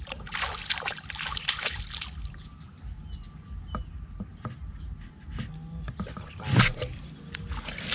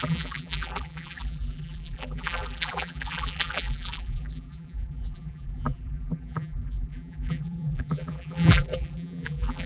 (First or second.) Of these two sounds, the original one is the first